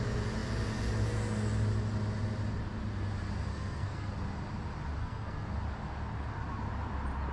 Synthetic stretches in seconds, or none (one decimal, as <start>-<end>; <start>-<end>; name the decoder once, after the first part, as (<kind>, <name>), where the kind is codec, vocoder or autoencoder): 3.5-4.1 (codec, SNAC); 5.0-5.6